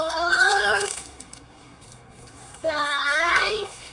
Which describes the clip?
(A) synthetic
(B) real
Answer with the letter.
A